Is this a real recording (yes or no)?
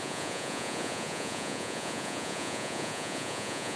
no